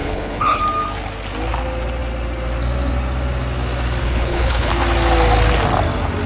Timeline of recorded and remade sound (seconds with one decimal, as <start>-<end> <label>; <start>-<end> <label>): 0.0-0.6 remade; 0.6-4.0 recorded; 4.0-4.7 remade; 4.7-6.3 recorded